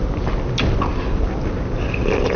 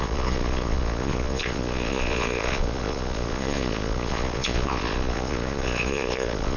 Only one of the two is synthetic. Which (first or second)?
second